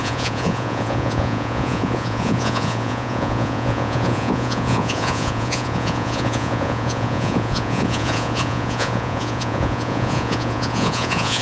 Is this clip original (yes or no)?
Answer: no